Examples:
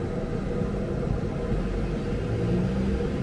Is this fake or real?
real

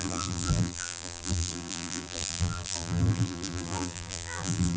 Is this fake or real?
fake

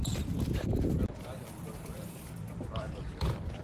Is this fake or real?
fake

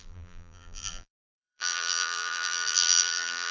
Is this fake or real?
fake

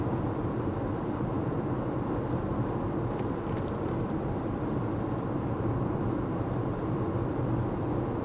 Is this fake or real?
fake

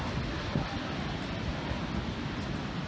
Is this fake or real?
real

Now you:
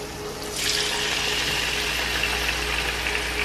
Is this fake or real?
real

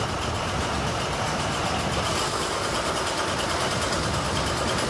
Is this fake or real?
real